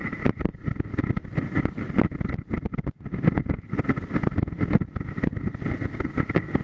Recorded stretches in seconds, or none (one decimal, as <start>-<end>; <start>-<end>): 0.0-6.6